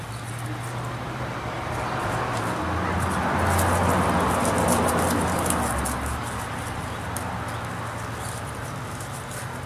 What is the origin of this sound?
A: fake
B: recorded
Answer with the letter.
B